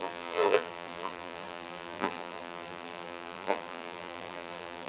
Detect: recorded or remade remade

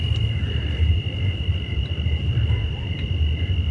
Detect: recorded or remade recorded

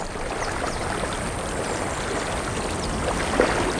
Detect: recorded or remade recorded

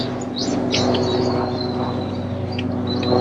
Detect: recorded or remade recorded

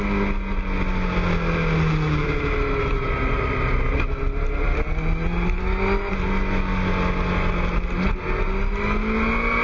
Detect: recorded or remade recorded